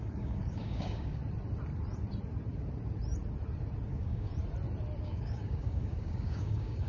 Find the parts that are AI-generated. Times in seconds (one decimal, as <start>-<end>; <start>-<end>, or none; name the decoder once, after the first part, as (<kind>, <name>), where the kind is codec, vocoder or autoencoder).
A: 0.0-1.2 (codec, DAC); 3.9-4.3; 5.0-6.9